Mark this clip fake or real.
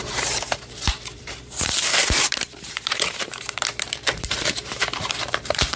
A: fake